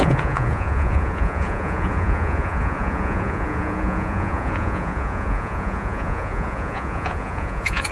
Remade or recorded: remade